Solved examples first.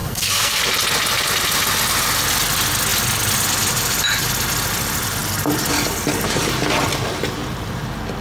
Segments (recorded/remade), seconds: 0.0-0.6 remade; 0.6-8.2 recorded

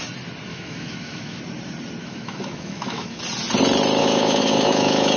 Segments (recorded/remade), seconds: 0.0-0.5 recorded; 0.5-1.4 remade; 1.4-2.0 recorded; 2.0-3.2 remade; 3.2-4.0 recorded; 4.0-5.2 remade

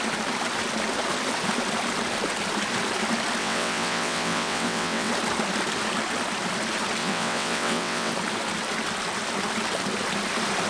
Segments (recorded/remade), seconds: 0.0-3.4 recorded; 3.4-5.1 remade; 5.1-7.0 recorded; 7.0-8.1 remade; 8.1-10.7 recorded

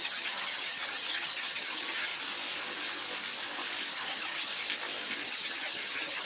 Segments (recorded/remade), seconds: 0.0-2.1 remade; 2.1-3.9 recorded; 3.9-4.5 remade; 4.5-5.2 recorded; 5.2-6.3 remade

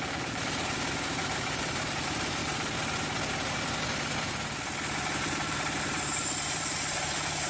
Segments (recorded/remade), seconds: 0.0-2.4 remade; 2.4-5.6 recorded; 5.6-7.5 remade

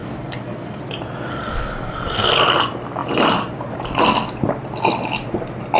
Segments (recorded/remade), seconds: 0.0-0.8 remade; 0.8-1.3 recorded; 1.3-2.3 remade; 2.3-5.8 recorded

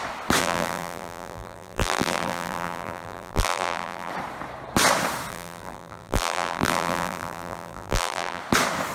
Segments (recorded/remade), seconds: 0.0-0.4 recorded; 0.4-4.1 remade; 4.1-5.3 recorded; 5.3-8.4 remade; 8.4-8.9 recorded